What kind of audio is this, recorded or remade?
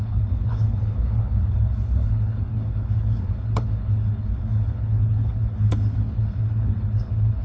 remade